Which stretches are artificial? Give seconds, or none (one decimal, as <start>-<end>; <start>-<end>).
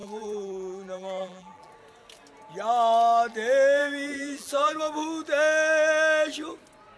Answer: 0.0-1.7; 3.8-4.8